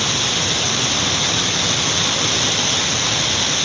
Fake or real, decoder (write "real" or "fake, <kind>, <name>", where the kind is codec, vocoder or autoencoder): real